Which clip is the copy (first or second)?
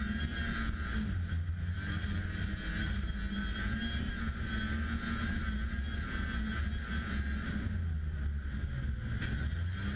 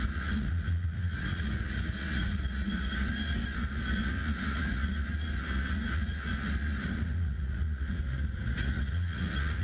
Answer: second